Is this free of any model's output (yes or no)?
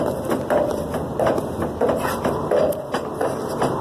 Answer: yes